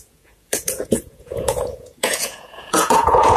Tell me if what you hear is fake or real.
fake